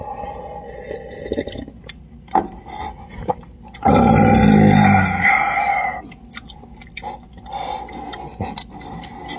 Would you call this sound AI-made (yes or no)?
no